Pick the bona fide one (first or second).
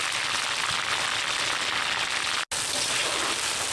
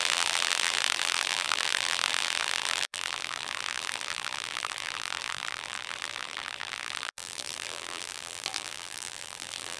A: first